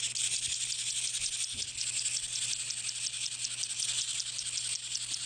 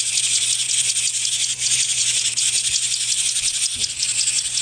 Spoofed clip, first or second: second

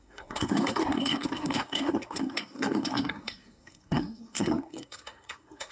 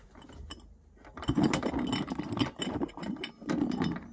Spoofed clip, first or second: first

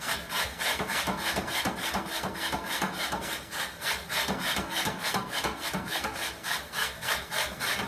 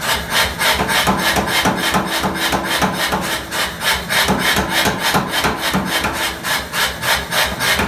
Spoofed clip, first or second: first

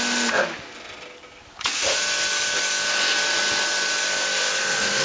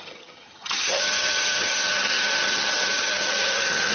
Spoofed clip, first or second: second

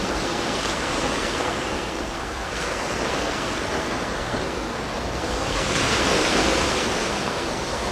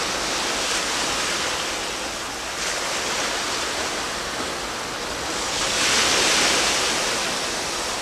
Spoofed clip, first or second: first